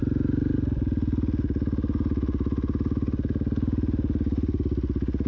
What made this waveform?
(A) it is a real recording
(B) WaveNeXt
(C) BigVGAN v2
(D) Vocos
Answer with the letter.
A